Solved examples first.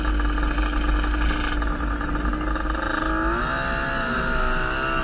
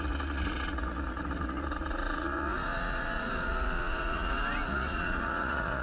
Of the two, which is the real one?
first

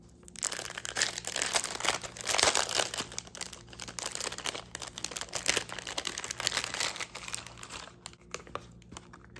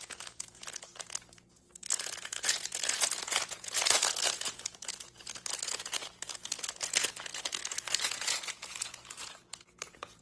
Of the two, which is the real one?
first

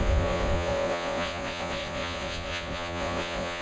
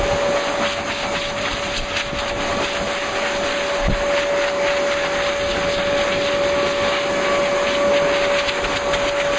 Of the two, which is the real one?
second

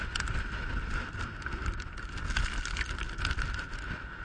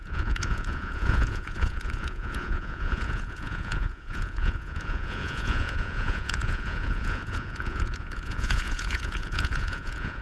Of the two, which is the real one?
first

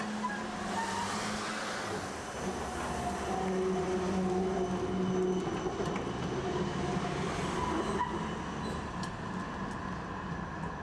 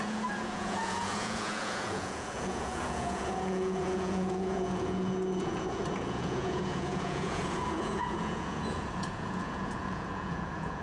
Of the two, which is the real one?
first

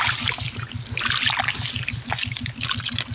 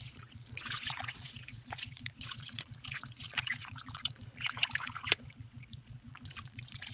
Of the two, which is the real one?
first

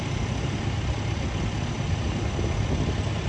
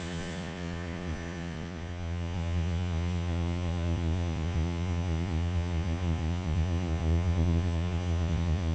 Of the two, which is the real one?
first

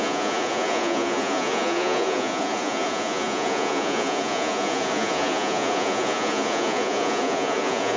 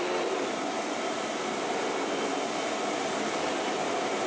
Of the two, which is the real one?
second